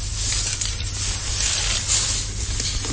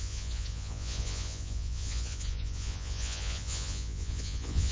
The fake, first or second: second